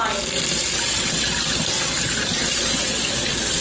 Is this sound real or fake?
real